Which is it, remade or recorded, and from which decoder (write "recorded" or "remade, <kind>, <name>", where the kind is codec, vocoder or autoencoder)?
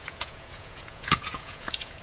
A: remade, vocoder, Vocos